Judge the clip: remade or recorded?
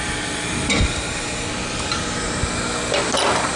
recorded